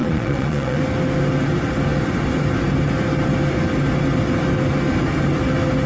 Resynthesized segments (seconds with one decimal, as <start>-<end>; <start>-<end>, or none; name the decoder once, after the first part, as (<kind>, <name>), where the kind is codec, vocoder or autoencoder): 0.0-0.8 (vocoder, Vocos)